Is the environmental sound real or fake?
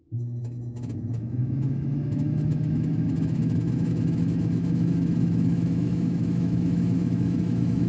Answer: fake